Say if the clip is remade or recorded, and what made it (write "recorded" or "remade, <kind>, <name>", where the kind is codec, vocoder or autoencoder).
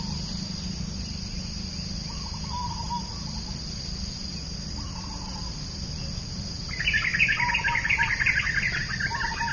recorded